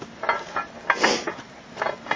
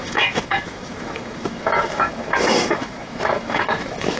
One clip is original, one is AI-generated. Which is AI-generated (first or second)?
second